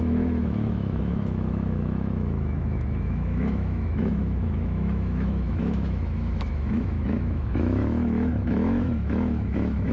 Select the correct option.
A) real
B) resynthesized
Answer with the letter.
B